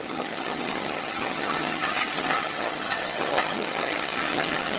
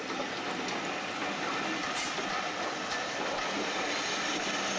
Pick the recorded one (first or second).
second